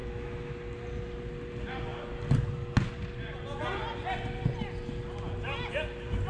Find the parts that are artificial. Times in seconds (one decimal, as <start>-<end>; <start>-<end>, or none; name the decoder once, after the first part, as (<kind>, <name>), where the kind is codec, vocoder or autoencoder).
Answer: 0.0-0.5 (autoencoder, DAC-VAE)